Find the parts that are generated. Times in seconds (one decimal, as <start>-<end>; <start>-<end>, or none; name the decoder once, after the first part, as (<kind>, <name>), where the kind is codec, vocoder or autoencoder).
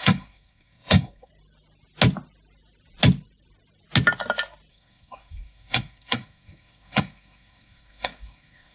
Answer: 0.0-1.3 (codec, SNAC); 4.7-8.7